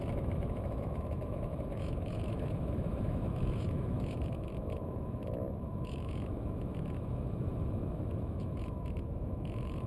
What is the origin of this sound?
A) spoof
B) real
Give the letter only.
A